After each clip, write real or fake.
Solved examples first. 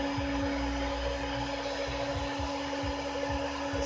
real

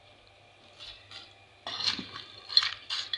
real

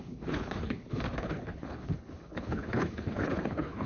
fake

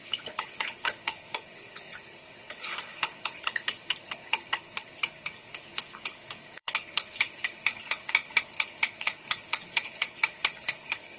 fake